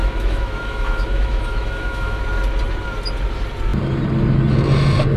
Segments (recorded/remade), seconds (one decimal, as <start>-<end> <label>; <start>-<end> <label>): 0.0-2.2 remade; 2.2-5.2 recorded